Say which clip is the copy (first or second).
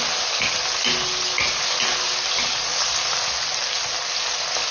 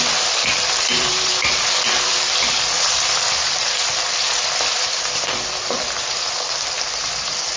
second